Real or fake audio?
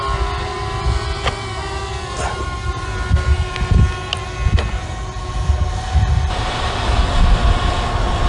real